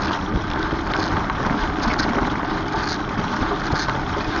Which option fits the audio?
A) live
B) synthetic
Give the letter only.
A